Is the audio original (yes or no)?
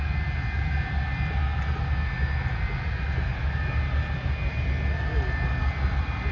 yes